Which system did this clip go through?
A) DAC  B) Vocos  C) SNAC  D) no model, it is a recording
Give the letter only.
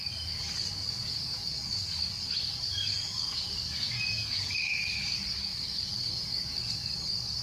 A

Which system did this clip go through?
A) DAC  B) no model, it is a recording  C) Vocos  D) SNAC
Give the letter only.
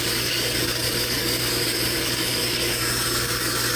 A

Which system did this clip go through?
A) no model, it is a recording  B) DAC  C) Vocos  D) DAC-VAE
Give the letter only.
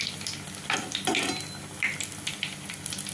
A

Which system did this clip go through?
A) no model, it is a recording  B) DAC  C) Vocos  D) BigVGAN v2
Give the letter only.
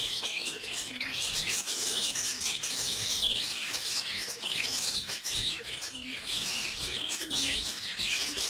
B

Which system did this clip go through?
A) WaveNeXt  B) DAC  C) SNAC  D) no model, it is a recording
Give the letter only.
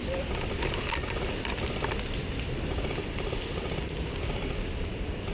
D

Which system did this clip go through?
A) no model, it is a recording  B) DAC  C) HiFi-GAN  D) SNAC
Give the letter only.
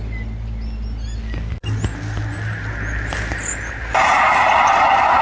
A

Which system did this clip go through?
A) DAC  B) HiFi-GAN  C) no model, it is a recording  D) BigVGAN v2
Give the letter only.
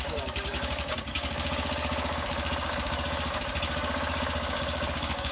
A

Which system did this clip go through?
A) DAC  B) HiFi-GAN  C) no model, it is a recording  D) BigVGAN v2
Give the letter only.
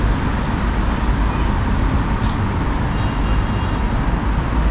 C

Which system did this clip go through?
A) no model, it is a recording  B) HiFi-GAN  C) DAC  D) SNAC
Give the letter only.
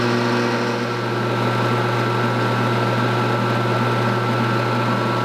A